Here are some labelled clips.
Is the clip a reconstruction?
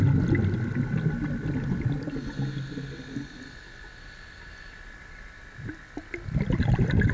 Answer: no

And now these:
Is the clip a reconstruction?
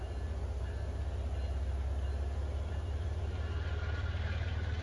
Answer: no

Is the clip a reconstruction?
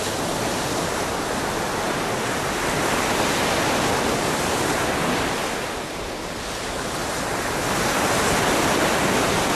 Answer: no